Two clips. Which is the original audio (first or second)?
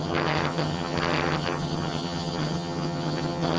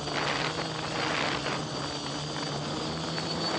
second